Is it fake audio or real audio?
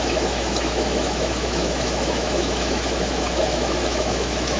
fake